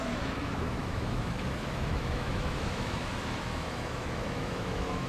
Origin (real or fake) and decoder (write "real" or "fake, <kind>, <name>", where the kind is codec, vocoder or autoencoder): fake, autoencoder, DAC-VAE